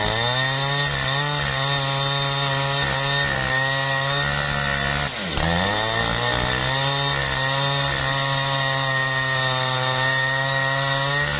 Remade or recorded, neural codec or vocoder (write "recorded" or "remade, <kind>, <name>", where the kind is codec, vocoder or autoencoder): recorded